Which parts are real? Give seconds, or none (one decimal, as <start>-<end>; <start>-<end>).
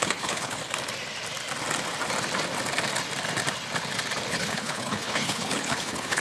0.6-4.3